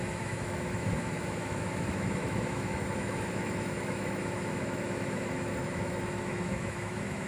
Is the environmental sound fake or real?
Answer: fake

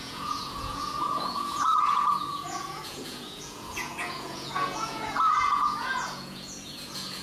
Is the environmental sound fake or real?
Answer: fake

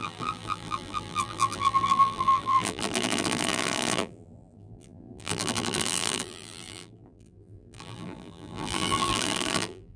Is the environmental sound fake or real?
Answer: fake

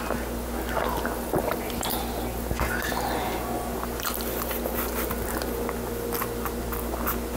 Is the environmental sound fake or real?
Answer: real